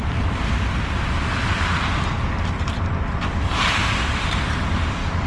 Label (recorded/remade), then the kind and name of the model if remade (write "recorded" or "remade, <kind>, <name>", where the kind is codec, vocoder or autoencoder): remade, vocoder, BigVGAN v2